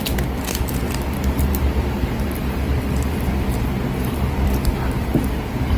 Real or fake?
fake